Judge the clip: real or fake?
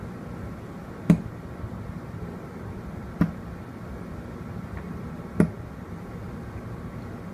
real